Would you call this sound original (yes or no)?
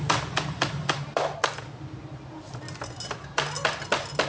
yes